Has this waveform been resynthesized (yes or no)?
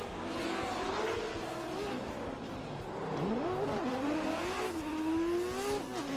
no